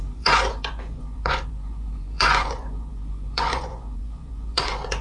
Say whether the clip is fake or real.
fake